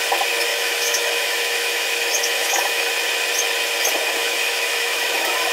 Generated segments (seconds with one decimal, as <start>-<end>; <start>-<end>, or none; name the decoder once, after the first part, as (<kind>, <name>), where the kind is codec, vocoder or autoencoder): 0.5-2.9 (autoencoder, DAC-VAE); 4.2-5.5